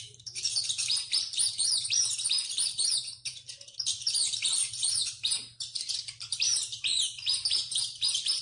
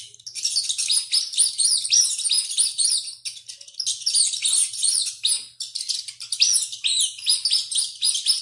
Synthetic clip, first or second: first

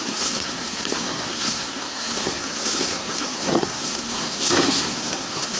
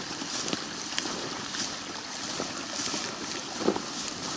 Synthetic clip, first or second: first